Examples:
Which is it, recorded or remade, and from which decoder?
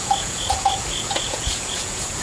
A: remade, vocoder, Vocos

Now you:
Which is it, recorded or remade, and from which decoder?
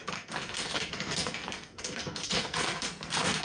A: remade, codec, SNAC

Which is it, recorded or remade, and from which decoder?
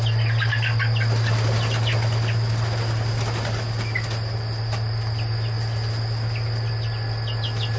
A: recorded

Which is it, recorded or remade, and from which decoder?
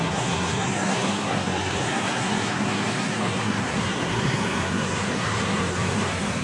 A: remade, codec, SNAC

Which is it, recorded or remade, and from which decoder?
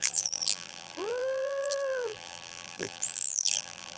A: remade, vocoder, BigVGAN v2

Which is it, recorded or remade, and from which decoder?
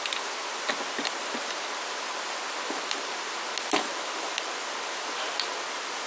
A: recorded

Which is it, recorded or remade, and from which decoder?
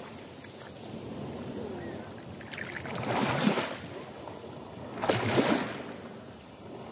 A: recorded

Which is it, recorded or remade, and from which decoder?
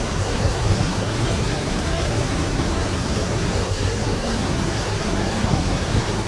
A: remade, codec, SNAC